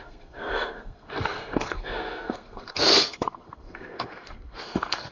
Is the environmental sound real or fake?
fake